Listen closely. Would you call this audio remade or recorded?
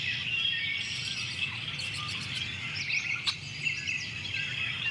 remade